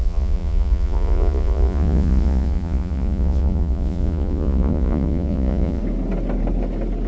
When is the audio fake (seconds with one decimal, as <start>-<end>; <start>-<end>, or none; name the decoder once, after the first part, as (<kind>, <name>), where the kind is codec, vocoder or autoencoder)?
0.0-5.8 (vocoder, Vocos)